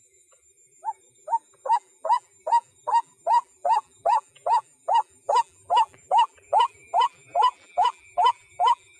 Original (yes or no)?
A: no